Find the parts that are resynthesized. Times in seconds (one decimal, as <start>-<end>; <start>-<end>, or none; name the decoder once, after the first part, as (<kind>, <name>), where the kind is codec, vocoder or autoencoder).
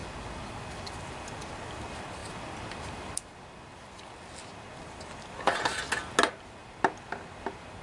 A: none